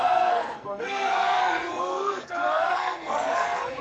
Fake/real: fake